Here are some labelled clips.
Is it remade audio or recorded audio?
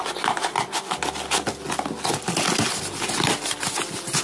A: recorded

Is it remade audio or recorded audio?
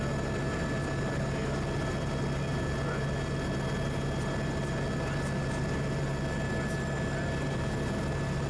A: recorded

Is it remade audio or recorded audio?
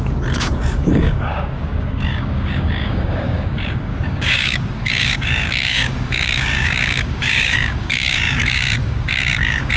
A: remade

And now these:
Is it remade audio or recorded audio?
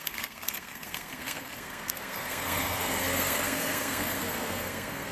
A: remade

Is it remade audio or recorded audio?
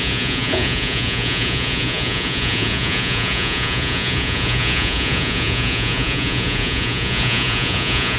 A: remade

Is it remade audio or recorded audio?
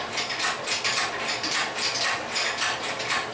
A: recorded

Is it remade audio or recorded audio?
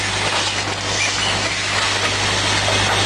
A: recorded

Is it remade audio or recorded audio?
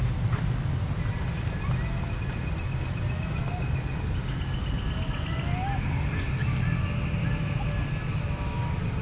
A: recorded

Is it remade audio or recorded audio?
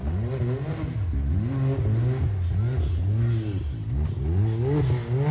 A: recorded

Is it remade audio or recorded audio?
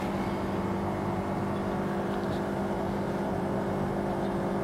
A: recorded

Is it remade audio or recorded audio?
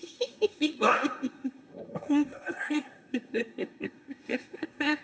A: remade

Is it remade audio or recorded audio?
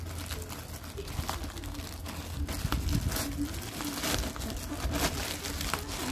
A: recorded